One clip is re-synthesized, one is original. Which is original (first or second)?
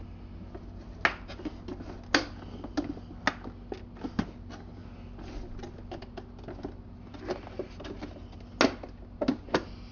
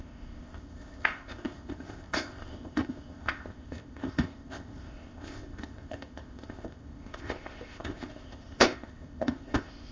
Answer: first